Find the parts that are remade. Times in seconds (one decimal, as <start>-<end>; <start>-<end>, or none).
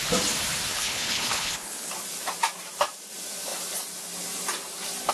0.7-1.9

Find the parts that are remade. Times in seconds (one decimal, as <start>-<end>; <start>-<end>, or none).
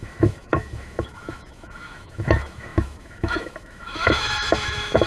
0.0-5.1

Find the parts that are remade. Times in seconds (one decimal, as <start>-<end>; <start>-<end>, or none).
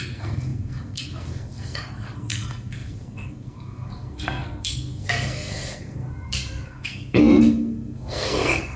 0.0-8.8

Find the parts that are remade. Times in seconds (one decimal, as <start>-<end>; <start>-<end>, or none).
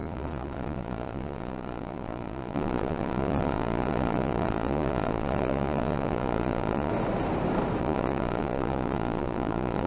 0.0-6.9; 7.8-9.9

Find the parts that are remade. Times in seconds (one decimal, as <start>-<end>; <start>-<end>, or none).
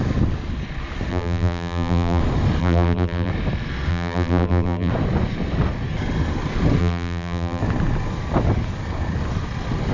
1.1-2.2; 2.6-3.3; 3.9-4.9; 6.8-7.6